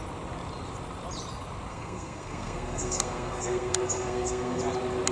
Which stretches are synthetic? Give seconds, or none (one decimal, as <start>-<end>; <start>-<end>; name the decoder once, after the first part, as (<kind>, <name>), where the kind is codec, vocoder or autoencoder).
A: 1.7-4.6 (codec, SNAC)